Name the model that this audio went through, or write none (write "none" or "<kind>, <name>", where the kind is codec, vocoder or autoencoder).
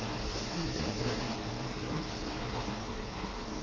codec, SNAC